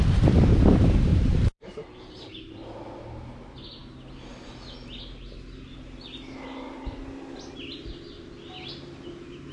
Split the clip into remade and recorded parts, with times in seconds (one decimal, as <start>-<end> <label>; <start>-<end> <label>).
0.0-1.1 recorded; 1.1-2.3 remade; 2.3-9.5 recorded